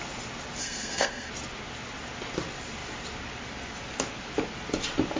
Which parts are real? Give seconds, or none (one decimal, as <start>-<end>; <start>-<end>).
0.0-0.6; 1.3-5.2